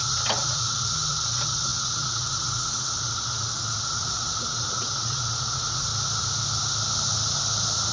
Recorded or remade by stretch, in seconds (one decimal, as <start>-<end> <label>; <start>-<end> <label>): 0.0-5.9 remade; 5.9-7.9 recorded